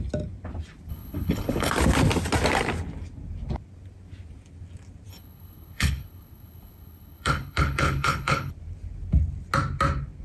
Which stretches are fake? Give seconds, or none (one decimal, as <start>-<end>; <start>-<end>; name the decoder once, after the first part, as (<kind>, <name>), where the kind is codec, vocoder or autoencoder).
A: 0.9-1.7 (codec, HILCodec); 5.1-8.5